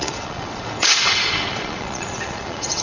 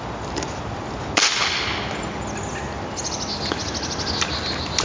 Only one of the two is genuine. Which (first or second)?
second